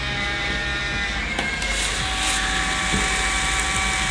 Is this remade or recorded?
recorded